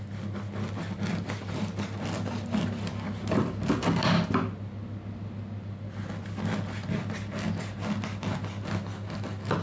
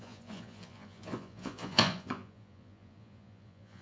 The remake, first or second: second